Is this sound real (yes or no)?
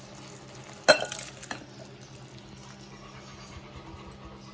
yes